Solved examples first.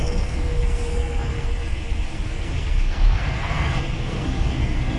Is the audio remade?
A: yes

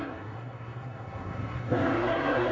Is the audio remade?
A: yes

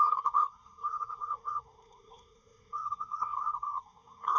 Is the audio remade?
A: yes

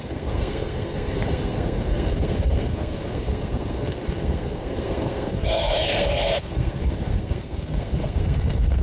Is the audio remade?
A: yes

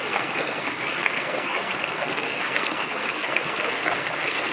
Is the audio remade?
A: yes